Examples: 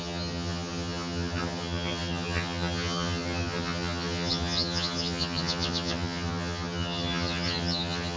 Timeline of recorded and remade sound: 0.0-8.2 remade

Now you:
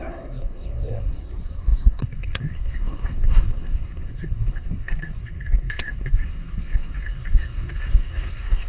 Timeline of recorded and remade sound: 0.0-8.7 remade

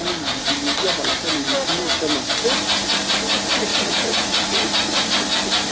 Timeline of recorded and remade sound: 0.0-3.7 recorded; 3.7-5.1 remade; 5.1-5.7 recorded

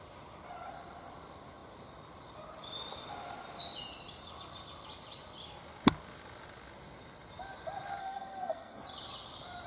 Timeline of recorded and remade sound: 0.0-8.0 recorded; 8.0-8.8 remade; 8.8-9.7 recorded